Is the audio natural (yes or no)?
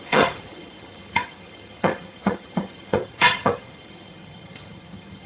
no